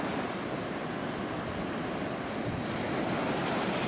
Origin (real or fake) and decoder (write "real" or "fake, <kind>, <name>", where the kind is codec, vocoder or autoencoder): real